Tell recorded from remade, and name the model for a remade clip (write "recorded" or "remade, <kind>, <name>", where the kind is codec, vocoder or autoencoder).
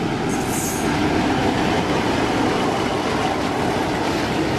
recorded